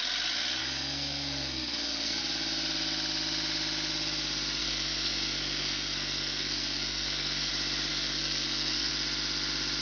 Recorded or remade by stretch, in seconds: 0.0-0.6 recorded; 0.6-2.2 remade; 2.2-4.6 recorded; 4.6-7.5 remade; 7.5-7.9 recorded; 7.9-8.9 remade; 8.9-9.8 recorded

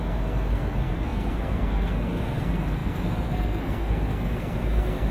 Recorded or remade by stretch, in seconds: 0.0-5.1 remade